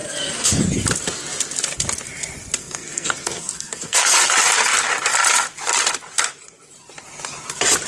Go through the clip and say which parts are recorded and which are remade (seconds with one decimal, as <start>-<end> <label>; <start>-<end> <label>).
0.0-0.6 remade; 0.6-2.6 recorded; 2.6-4.2 remade; 4.2-7.9 recorded